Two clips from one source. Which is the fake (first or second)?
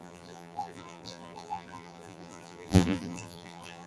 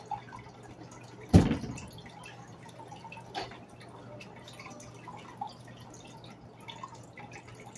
first